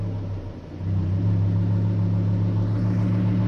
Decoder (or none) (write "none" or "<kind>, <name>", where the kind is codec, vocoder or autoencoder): none